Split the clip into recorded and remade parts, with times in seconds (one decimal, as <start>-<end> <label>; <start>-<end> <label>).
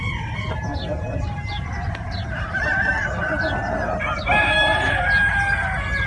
0.0-0.7 recorded; 0.7-2.9 remade; 2.9-6.1 recorded